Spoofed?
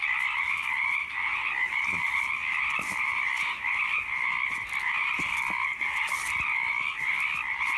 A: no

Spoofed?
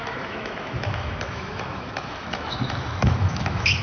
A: yes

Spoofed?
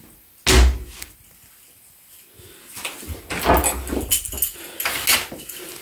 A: no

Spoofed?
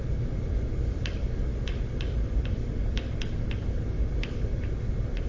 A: no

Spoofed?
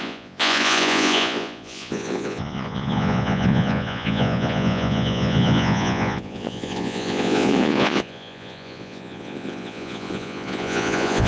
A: yes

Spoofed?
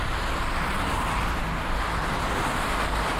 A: no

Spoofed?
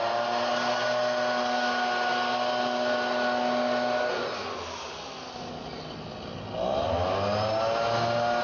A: no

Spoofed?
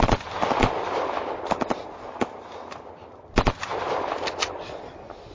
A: no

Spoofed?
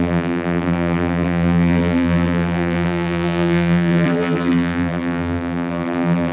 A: yes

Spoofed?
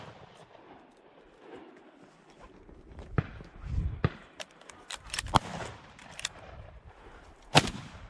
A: yes